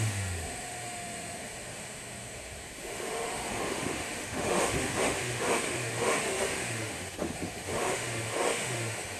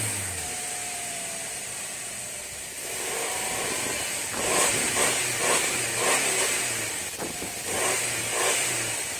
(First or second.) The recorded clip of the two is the second